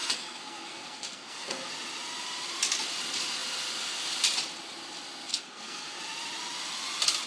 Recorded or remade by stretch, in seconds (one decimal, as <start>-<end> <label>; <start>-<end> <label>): 0.0-1.7 remade; 1.7-5.3 recorded; 5.3-6.0 remade; 6.0-7.3 recorded